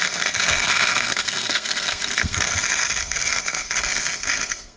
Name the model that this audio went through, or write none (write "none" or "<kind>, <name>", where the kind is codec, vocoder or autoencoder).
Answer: codec, SNAC